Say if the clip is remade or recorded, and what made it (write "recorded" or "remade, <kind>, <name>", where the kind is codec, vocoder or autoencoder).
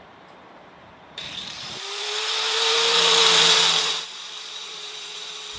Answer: remade, vocoder, BigVGAN v2